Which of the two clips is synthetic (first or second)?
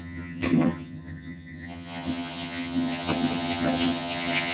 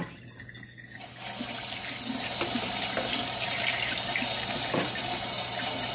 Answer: first